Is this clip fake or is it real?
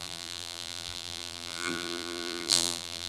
fake